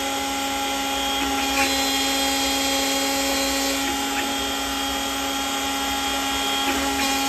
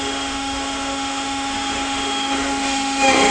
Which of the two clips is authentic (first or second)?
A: first